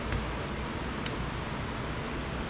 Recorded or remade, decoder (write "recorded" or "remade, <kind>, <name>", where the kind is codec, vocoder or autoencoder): recorded